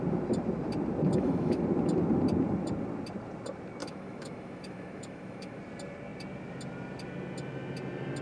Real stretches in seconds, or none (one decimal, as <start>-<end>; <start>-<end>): 0.0-1.1; 1.6-3.8; 5.6-8.2